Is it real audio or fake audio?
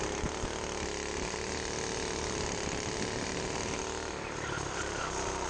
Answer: real